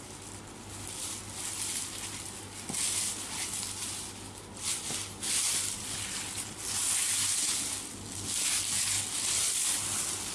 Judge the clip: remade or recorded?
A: recorded